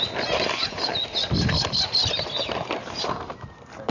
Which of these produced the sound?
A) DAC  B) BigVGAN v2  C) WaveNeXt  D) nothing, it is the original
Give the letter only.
D